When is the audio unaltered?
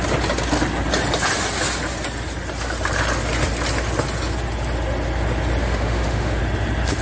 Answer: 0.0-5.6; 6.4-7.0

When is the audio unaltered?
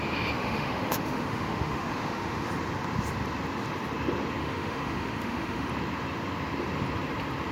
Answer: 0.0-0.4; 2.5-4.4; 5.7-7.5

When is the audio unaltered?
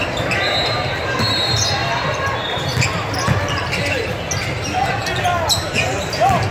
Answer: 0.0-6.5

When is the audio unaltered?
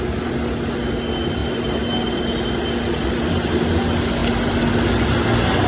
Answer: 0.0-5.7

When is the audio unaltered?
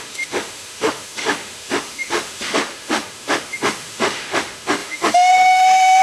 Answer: none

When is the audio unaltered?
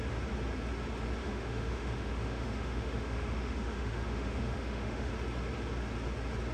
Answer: 0.0-1.2; 5.1-6.5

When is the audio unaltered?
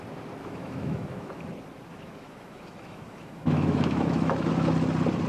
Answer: 0.0-0.4; 1.3-1.9; 4.5-5.3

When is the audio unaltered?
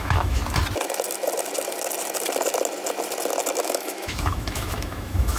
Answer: 0.4-3.6